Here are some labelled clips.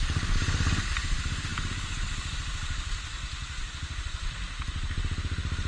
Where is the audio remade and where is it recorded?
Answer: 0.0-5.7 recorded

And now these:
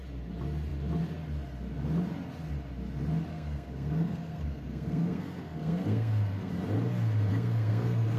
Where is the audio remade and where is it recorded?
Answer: 0.0-3.3 recorded; 3.3-6.5 remade; 6.5-7.3 recorded; 7.3-8.2 remade

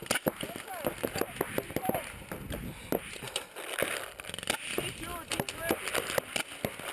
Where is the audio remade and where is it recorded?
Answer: 0.0-6.9 recorded

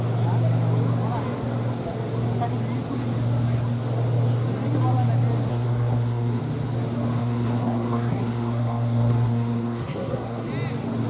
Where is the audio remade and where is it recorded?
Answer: 0.0-5.5 recorded; 5.5-6.4 remade; 6.4-7.2 recorded; 7.2-10.5 remade; 10.5-11.1 recorded

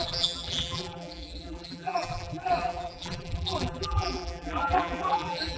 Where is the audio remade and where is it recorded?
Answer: 0.0-5.6 remade

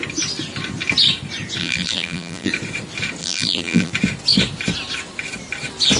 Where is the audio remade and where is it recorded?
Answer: 0.0-1.6 recorded; 1.6-2.5 remade; 2.5-3.2 recorded; 3.2-3.9 remade; 3.9-6.0 recorded

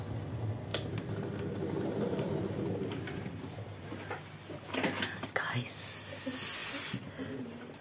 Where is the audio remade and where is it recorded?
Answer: 0.0-0.7 recorded; 0.7-3.9 remade; 3.9-7.8 recorded

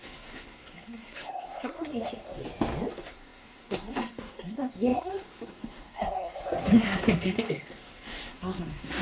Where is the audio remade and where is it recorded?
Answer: 0.0-2.4 remade; 2.4-2.9 recorded; 2.9-9.0 remade